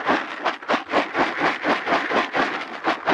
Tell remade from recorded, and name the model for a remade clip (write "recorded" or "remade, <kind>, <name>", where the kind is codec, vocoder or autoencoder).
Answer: recorded